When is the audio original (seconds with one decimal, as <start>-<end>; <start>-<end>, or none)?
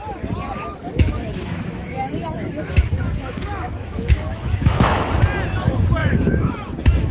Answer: 0.0-0.8; 5.1-6.0; 6.5-7.1